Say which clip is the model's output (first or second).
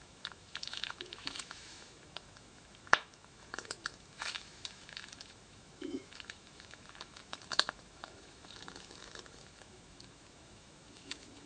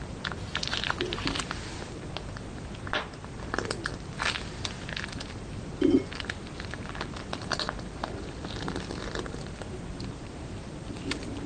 first